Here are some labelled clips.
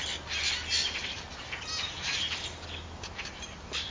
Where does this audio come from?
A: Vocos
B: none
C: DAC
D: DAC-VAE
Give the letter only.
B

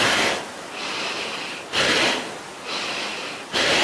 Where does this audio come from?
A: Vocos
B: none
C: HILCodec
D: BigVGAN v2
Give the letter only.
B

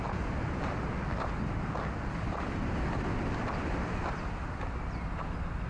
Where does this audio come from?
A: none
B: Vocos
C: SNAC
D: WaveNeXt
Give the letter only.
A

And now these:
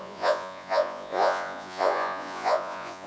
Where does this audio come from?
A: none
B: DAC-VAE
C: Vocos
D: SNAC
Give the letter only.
C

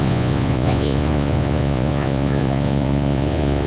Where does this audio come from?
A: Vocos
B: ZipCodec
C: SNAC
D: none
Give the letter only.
A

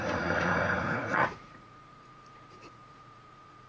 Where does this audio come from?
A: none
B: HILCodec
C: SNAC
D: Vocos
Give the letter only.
D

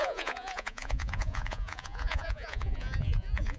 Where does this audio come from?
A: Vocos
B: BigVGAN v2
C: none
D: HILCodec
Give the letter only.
A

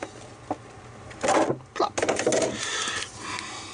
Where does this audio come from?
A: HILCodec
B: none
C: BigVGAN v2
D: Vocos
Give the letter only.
B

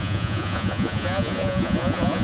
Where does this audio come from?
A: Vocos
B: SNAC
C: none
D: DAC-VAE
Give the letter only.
A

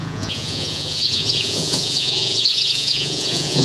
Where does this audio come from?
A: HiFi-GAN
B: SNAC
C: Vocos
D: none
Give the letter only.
C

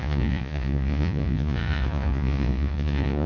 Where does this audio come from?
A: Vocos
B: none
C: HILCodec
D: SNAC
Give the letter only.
A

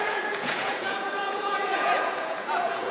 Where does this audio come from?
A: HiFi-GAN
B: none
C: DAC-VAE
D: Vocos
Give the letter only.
D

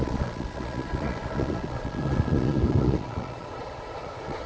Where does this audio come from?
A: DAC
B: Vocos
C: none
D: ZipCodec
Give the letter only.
B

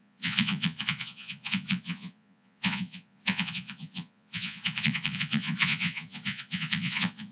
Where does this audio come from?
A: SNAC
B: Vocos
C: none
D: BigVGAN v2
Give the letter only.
B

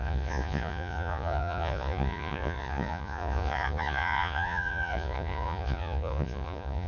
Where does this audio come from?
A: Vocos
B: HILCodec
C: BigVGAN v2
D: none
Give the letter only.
A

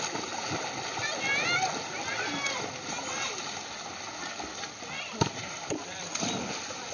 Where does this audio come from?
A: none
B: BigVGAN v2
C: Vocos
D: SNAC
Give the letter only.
A